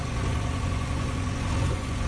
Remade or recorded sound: remade